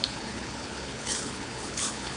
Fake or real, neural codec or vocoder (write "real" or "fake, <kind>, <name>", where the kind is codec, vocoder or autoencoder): fake, codec, HILCodec